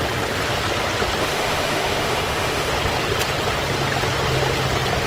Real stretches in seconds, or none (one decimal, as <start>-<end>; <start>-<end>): 0.0-1.2; 2.7-5.1